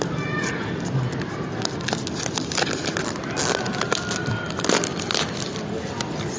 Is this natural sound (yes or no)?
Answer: yes